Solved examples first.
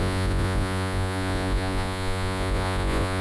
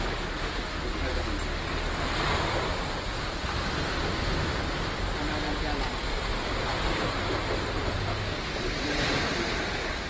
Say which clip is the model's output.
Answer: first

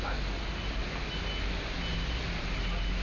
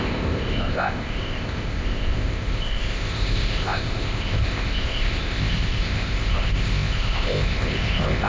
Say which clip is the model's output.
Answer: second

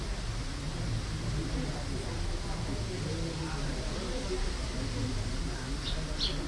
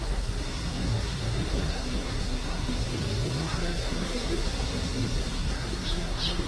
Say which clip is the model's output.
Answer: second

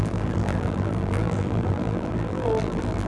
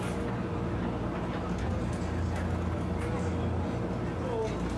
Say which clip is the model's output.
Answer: first